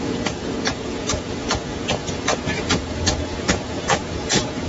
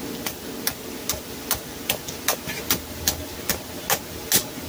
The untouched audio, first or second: second